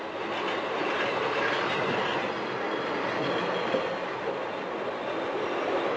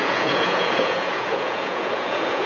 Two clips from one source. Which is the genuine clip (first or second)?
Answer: first